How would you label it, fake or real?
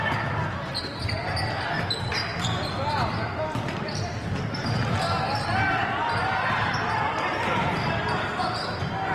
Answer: real